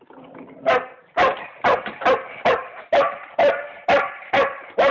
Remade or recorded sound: recorded